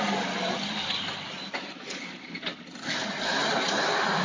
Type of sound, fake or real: real